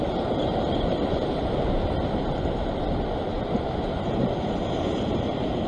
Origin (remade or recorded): remade